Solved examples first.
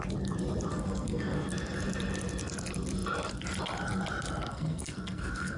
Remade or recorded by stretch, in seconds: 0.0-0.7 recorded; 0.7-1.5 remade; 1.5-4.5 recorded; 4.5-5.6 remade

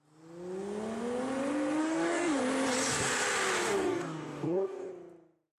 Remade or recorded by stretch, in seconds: 0.0-1.8 recorded; 1.8-2.4 remade; 2.4-3.6 recorded; 3.6-4.9 remade; 4.9-5.6 recorded